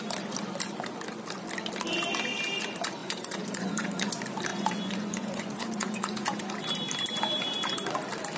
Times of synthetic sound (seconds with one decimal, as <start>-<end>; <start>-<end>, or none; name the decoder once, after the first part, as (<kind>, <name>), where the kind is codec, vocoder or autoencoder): 3.0-4.1 (vocoder, Vocos); 4.5-6.5